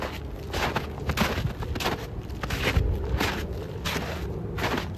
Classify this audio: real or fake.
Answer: real